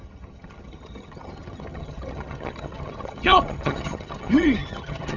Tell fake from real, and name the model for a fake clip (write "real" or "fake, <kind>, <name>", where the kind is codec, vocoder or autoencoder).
fake, vocoder, HiFi-GAN